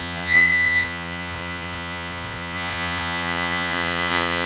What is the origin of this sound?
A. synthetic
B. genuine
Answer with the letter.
A